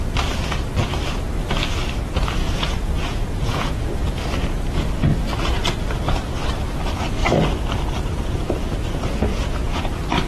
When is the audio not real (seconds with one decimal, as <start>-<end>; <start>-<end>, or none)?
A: 2.4-3.9; 9.3-9.9

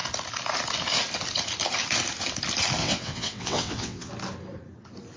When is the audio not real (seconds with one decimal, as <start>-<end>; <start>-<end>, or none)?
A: 2.8-4.1

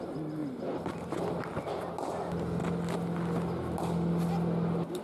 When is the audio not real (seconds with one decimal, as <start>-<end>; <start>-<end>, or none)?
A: none

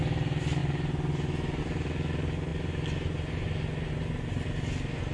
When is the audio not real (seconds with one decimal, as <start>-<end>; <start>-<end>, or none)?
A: none

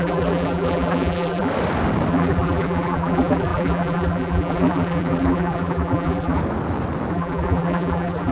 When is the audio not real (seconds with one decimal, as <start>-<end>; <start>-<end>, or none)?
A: 0.0-1.5; 2.1-6.4; 7.1-8.3

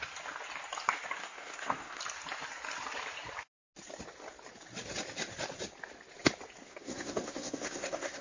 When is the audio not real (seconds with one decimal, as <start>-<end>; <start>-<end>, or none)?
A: 1.2-2.0; 6.6-8.2